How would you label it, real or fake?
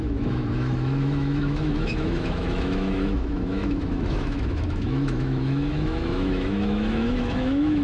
fake